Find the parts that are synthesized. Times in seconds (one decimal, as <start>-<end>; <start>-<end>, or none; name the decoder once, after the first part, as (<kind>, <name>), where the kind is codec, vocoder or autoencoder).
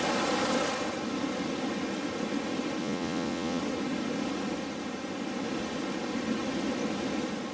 2.8-3.6 (vocoder, Vocos)